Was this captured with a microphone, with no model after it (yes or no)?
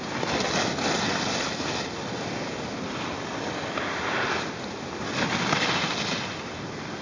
yes